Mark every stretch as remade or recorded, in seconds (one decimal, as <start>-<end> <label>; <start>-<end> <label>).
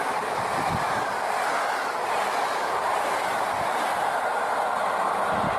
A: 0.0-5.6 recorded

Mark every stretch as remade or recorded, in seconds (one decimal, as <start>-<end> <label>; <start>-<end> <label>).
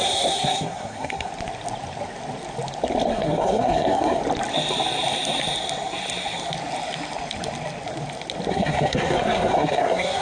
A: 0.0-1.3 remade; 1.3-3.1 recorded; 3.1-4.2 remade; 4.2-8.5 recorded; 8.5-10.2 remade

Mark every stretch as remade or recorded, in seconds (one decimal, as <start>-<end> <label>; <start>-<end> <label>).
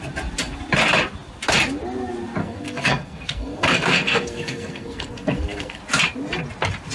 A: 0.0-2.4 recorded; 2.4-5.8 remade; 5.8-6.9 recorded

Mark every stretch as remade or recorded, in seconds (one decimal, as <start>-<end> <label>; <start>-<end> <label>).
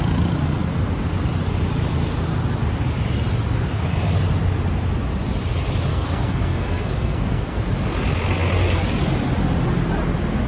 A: 0.0-5.9 recorded; 5.9-7.6 remade; 7.6-10.5 recorded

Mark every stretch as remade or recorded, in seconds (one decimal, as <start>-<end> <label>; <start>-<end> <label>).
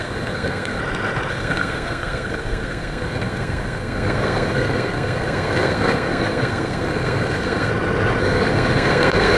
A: 0.0-0.8 remade; 0.8-1.3 recorded; 1.3-7.7 remade; 7.7-8.2 recorded; 8.2-9.4 remade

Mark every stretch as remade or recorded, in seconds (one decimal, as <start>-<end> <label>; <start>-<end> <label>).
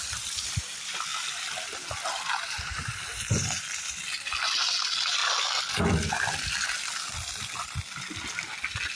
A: 0.0-9.0 recorded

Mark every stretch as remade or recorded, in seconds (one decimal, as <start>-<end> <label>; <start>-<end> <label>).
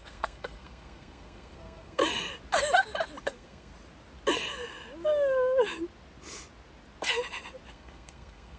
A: 0.0-2.0 remade; 2.0-3.2 recorded; 3.2-3.7 remade; 3.7-7.7 recorded; 7.7-8.6 remade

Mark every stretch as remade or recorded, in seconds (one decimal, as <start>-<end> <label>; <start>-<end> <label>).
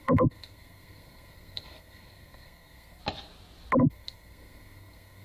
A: 0.0-3.0 remade; 3.0-3.8 recorded; 3.8-5.2 remade